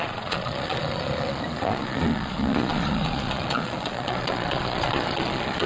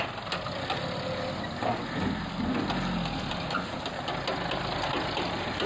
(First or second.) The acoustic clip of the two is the second